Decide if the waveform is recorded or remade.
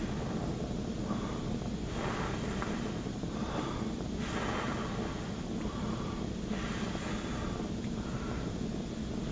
recorded